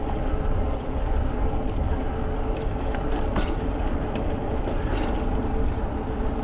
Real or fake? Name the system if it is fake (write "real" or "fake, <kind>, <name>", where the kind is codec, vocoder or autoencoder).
real